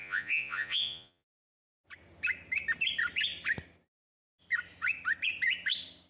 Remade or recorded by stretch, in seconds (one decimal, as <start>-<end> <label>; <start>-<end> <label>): 0.0-1.3 remade; 1.3-6.1 recorded

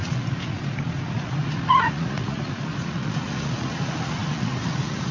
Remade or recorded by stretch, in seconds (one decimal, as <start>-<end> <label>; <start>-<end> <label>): 0.0-0.6 remade; 0.6-1.1 recorded; 1.1-5.1 remade